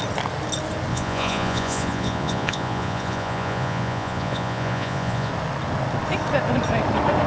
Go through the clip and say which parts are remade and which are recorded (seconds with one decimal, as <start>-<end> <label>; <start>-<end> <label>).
0.0-0.9 recorded; 0.9-5.3 remade; 5.3-7.3 recorded

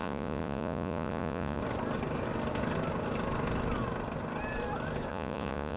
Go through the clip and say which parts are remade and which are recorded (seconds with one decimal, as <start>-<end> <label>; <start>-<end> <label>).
0.0-1.6 remade; 1.6-5.1 recorded; 5.1-5.8 remade

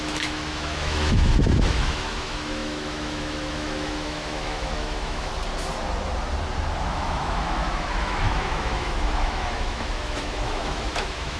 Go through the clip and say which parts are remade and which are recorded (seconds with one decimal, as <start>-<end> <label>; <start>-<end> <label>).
0.0-5.3 remade; 5.3-6.8 recorded; 6.8-11.4 remade

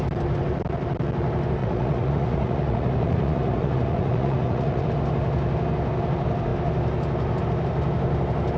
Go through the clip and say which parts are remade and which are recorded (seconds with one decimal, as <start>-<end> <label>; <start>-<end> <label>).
0.0-1.6 recorded; 1.6-4.9 remade; 4.9-8.6 recorded

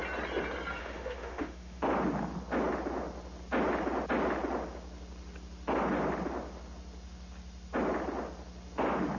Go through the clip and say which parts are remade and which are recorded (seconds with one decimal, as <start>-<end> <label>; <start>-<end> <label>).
0.0-0.8 recorded; 0.8-1.8 remade; 1.8-9.2 recorded

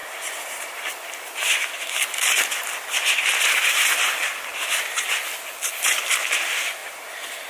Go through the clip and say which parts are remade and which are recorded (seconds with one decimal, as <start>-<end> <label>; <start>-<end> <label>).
0.0-2.2 remade; 2.2-6.8 recorded; 6.8-7.5 remade

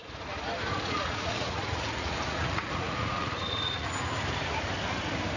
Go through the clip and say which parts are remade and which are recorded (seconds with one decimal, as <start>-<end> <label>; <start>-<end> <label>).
0.0-0.7 recorded; 0.7-3.9 remade; 3.9-5.4 recorded